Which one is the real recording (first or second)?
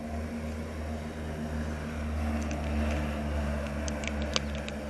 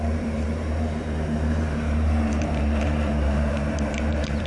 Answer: first